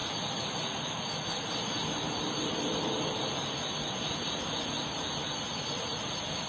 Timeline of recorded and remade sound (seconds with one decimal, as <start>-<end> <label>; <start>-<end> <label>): 0.0-6.5 recorded